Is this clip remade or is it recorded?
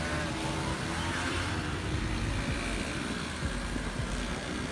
recorded